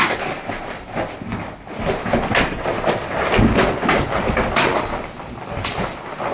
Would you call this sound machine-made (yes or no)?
no